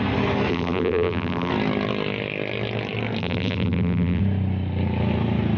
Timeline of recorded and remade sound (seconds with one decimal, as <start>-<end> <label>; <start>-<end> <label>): 0.0-0.5 recorded; 0.5-1.5 remade; 1.5-3.2 recorded; 3.2-4.2 remade; 4.2-5.6 recorded